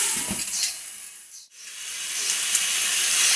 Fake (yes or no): no